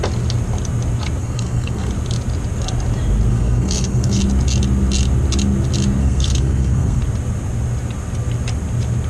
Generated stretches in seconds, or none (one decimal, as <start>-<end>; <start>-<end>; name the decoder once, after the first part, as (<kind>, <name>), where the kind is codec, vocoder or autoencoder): 1.2-1.9 (codec, SNAC); 3.3-4.2; 6.0-7.0